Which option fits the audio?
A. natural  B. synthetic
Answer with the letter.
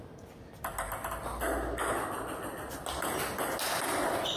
A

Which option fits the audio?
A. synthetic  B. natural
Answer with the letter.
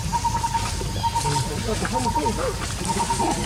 B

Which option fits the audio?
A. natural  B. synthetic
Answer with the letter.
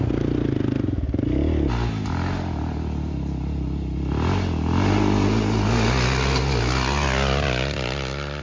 A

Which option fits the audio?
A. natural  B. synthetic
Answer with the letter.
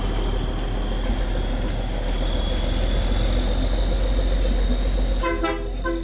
A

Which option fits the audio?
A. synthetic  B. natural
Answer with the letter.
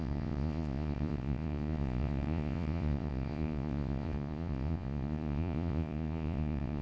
A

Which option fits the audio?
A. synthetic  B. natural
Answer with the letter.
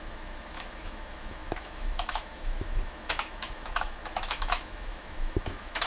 A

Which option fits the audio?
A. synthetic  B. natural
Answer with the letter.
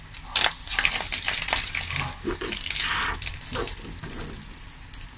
B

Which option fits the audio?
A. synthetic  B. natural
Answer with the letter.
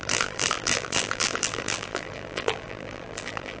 A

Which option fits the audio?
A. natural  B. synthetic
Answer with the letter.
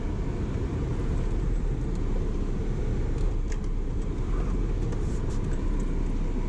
A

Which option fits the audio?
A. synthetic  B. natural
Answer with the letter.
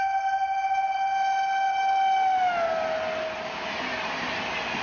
B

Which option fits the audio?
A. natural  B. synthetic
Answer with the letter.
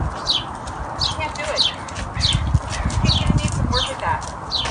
A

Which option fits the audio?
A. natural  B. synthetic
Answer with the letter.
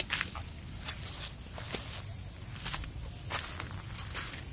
A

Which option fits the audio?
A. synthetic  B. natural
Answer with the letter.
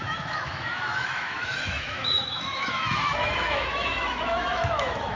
A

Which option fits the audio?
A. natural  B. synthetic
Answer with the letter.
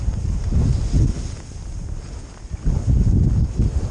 A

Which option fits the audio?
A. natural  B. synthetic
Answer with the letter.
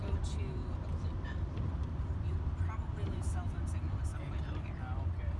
B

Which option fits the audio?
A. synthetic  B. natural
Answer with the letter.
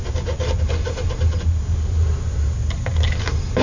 B